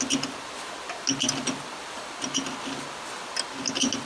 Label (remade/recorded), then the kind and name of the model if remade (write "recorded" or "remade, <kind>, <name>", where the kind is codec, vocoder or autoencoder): recorded